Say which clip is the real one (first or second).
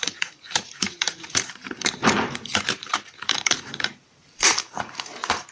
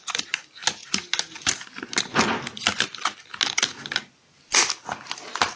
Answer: second